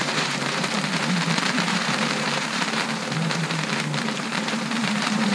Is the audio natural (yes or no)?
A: no